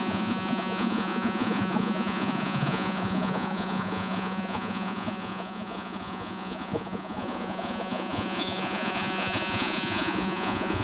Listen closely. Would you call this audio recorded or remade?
remade